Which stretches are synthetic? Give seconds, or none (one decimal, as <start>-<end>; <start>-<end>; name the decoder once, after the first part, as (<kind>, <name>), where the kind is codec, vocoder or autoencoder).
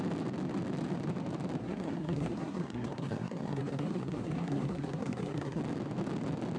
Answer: 1.6-5.6 (codec, SNAC)